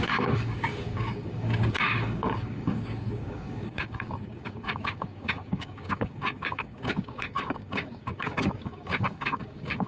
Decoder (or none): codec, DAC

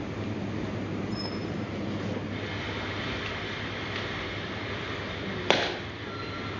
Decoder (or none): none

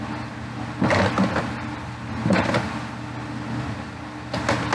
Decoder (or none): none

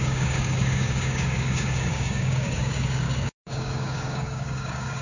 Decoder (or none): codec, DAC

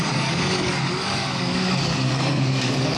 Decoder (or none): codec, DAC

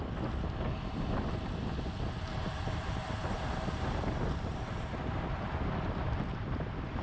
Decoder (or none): none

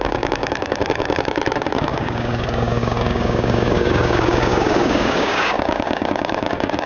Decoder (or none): codec, DAC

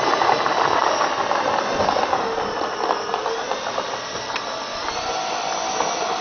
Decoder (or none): none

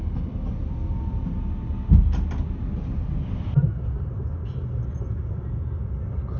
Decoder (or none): none